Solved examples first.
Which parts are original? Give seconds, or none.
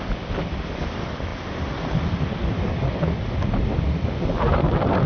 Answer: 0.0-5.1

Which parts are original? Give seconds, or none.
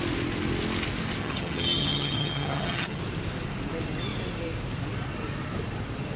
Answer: 0.0-1.2; 3.0-6.2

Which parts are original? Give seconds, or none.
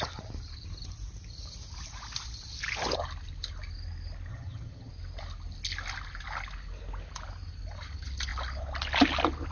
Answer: 0.0-4.3; 4.9-9.5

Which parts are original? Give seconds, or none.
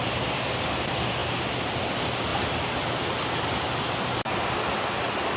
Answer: 0.0-5.4